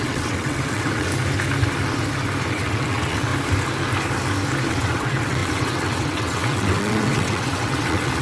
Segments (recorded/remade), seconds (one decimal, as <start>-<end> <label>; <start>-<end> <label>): 0.0-1.1 remade; 1.1-2.5 recorded; 2.5-3.3 remade; 3.3-4.7 recorded; 4.7-8.2 remade